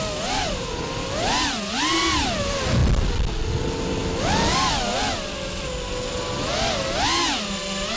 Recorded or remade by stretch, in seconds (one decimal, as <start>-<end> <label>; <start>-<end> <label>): 0.0-8.0 recorded